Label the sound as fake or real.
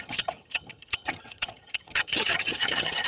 fake